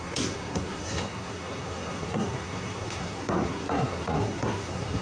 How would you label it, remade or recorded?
remade